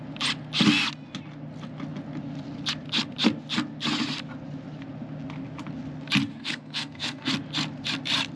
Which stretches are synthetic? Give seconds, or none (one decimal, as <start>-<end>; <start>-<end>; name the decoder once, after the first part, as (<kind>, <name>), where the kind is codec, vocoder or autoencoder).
6.3-7.3 (codec, SNAC)